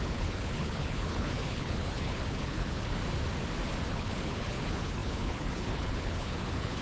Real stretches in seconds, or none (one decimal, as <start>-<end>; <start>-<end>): 3.0-3.9

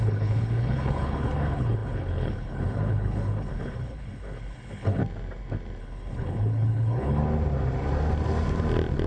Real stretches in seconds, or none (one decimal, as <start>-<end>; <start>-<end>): 5.0-5.8; 7.2-9.1